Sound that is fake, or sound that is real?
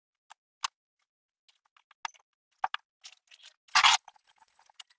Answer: real